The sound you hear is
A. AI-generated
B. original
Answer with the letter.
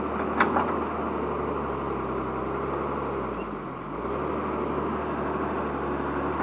B